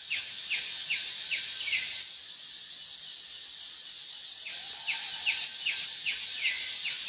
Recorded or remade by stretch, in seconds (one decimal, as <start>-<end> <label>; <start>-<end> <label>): 0.0-0.4 recorded; 0.4-2.1 remade; 2.1-3.8 recorded; 3.8-4.6 remade; 4.6-7.1 recorded